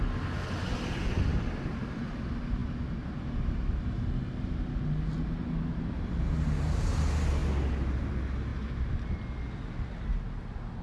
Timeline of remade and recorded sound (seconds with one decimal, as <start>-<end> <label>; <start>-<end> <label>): 0.0-10.8 recorded